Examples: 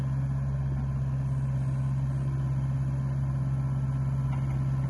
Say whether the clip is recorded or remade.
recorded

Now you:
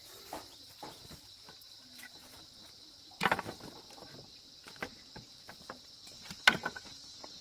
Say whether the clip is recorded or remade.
recorded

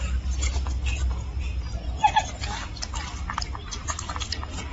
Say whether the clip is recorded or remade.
recorded